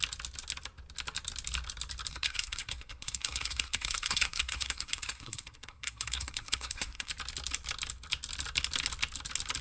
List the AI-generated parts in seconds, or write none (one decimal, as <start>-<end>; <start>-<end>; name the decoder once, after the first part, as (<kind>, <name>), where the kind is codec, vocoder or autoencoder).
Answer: 2.1-7.1 (codec, SNAC)